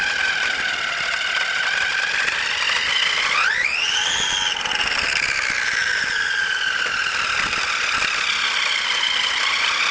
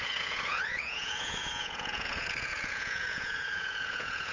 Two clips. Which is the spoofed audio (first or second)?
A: second